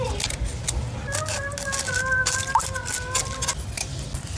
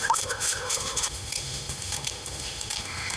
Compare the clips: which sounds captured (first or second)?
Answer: first